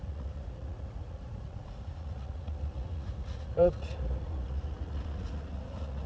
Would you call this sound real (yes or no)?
no